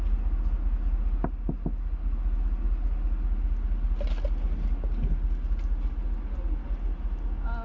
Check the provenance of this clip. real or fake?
real